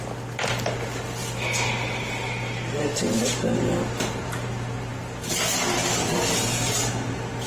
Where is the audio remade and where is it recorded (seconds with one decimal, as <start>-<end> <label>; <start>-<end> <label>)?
0.0-7.5 remade